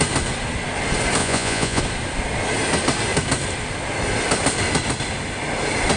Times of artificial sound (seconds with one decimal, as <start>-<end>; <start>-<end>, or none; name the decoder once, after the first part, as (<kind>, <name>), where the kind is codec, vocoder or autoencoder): 1.2-1.8 (vocoder, Vocos)